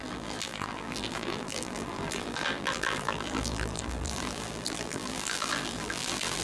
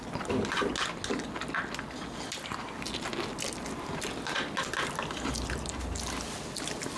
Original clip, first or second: second